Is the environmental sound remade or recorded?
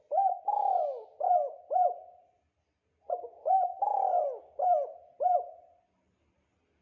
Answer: recorded